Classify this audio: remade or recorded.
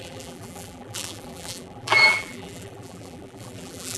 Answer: remade